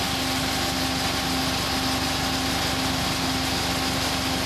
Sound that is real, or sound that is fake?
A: real